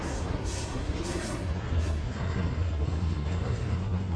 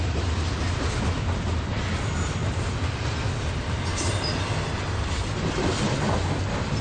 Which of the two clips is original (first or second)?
second